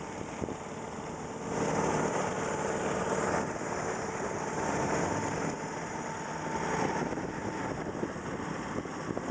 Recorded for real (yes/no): yes